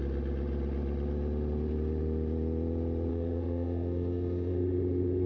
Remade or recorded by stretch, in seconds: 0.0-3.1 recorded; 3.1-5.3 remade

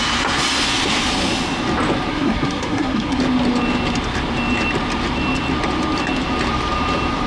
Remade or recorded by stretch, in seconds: 0.0-2.1 recorded; 2.1-3.2 remade; 3.2-7.3 recorded

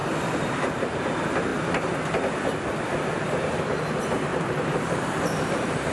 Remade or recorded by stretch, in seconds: 0.0-0.8 remade; 0.8-4.3 recorded; 4.3-5.9 remade

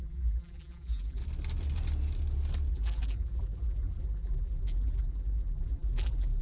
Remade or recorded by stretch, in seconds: 0.0-1.2 remade; 1.2-2.7 recorded; 2.7-6.4 remade

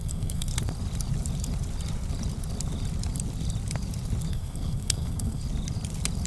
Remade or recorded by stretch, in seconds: 0.0-0.5 remade; 0.5-4.3 recorded; 4.3-5.4 remade; 5.4-6.3 recorded

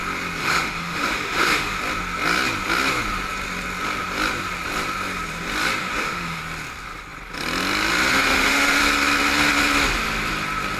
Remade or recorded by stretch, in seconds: 0.0-0.4 recorded; 0.4-1.8 remade; 1.8-5.8 recorded; 5.8-6.4 remade; 6.4-8.1 recorded; 8.1-8.8 remade; 8.8-10.8 recorded

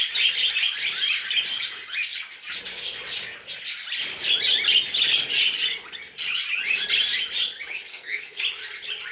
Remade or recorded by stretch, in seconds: 0.0-7.9 recorded; 7.9-8.4 remade; 8.4-9.1 recorded